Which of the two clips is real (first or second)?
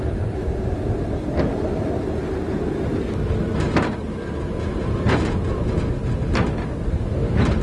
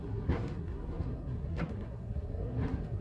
first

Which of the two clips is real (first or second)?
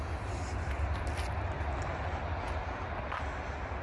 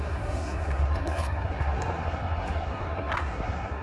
first